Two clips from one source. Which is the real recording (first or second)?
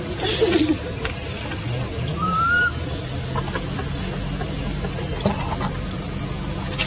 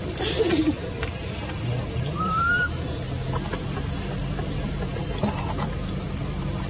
first